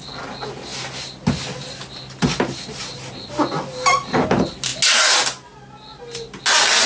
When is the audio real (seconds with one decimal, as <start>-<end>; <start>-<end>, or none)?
0.0-6.9